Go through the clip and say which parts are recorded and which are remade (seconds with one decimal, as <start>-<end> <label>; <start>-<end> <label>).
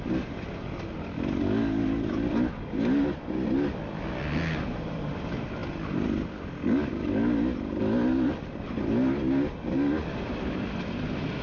0.0-11.4 recorded